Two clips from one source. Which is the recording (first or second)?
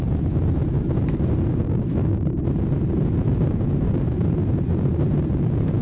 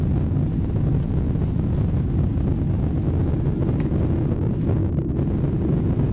second